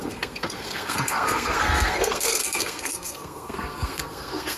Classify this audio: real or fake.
fake